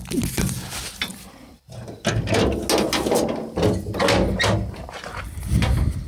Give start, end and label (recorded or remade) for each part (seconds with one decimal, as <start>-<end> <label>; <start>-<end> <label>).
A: 0.0-6.1 recorded